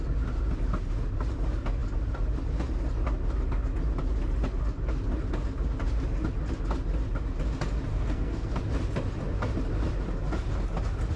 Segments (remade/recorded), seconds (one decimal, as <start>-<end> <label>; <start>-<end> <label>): 0.0-7.9 recorded; 7.9-8.6 remade; 8.6-11.2 recorded

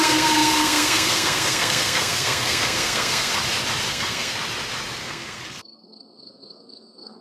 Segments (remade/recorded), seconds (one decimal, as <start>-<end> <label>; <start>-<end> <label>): 0.0-3.3 remade; 3.3-3.9 recorded; 3.9-4.3 remade; 4.3-5.0 recorded; 5.0-7.2 remade

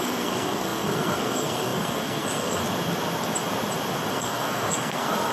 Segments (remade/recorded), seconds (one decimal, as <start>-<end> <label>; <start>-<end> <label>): 0.0-2.6 remade; 2.6-4.1 recorded; 4.1-5.3 remade

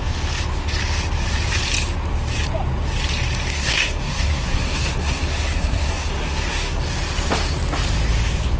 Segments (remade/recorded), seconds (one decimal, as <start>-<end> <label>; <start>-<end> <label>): 0.0-3.5 recorded; 3.5-6.8 remade; 6.8-8.6 recorded

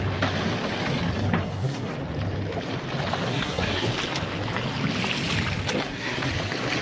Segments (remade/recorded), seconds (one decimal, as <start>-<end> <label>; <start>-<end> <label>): 0.0-1.4 recorded; 1.4-1.9 remade; 1.9-3.3 recorded; 3.3-3.9 remade; 3.9-5.8 recorded; 5.8-6.3 remade; 6.3-6.8 recorded

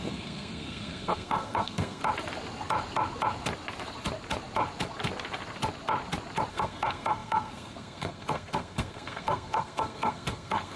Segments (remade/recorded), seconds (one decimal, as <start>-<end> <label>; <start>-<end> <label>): 0.0-2.0 remade; 2.0-6.5 recorded; 6.5-10.8 remade

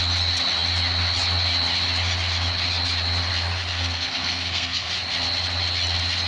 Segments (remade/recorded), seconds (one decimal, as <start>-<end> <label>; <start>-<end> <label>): 0.0-3.7 recorded; 3.7-4.9 remade; 4.9-6.3 recorded